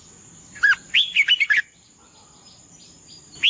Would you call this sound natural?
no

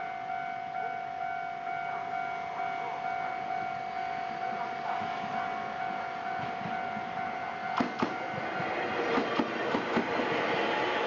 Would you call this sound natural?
yes